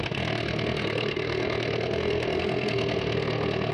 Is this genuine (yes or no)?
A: no